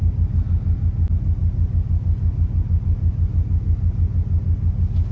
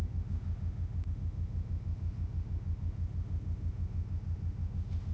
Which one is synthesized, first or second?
second